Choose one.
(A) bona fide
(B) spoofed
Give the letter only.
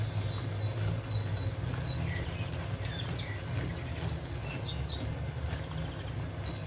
A